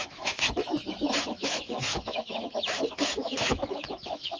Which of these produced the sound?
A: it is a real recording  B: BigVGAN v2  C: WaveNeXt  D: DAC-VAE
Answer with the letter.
D